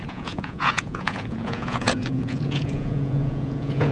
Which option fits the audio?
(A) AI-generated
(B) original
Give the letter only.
A